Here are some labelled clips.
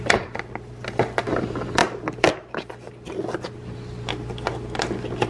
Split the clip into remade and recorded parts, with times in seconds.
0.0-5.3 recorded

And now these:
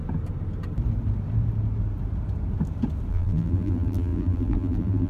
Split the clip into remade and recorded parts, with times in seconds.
0.0-3.1 recorded; 3.1-5.1 remade

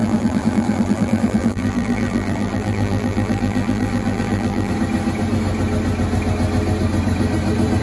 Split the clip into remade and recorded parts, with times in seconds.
0.0-4.7 remade; 4.7-7.8 recorded

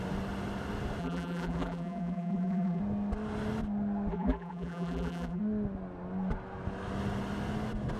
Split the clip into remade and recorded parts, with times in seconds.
0.0-1.0 recorded; 1.0-2.8 remade; 2.8-4.1 recorded; 4.1-5.4 remade; 5.4-8.0 recorded